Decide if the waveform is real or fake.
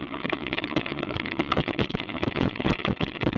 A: fake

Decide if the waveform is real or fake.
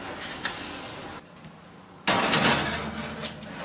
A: real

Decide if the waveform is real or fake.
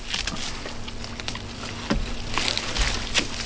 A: real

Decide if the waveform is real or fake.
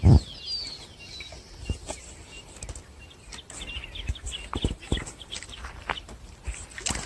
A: real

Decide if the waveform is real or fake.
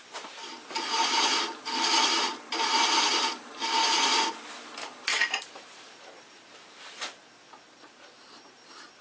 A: fake